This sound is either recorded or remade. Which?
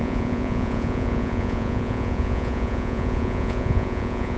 remade